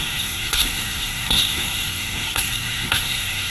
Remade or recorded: remade